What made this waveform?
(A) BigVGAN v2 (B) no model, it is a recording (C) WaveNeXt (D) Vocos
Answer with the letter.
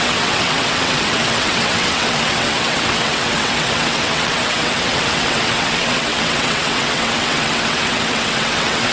C